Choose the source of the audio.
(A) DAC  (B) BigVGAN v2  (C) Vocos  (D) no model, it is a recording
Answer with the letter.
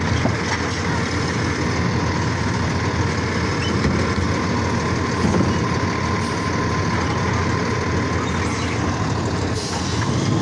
D